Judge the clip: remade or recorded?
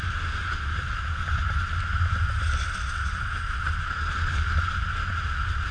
recorded